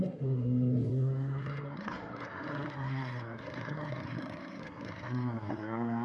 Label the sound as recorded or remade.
remade